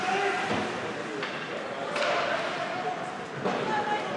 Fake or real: real